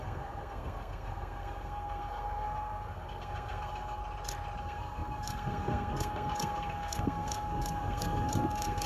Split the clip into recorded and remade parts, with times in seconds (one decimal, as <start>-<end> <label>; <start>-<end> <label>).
0.0-4.0 remade; 4.0-4.6 recorded; 4.6-8.9 remade